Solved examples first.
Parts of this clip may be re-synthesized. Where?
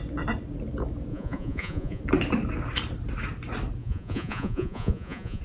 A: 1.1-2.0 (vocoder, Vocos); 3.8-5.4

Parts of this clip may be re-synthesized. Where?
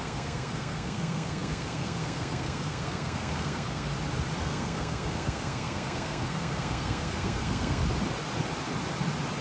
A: 0.0-3.9 (codec, SNAC); 4.4-7.8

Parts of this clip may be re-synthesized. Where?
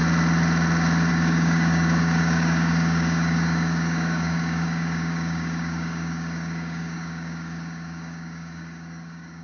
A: 1.1-9.4 (codec, DAC)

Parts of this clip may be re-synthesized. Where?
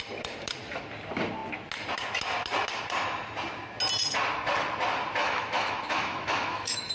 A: 5.2-6.9 (autoencoder, DAC-VAE)